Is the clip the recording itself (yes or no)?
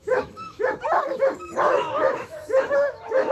no